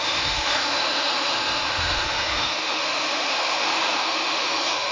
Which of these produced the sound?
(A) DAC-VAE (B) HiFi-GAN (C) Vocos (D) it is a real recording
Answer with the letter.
A